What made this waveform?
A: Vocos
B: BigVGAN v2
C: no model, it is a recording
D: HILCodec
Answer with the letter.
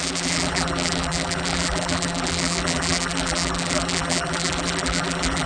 B